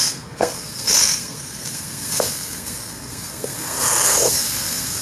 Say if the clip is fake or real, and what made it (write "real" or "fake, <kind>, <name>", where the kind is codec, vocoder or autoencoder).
fake, codec, SNAC